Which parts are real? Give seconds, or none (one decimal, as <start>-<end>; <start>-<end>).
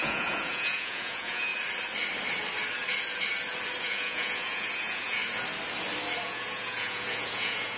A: 1.5-3.8; 5.2-6.2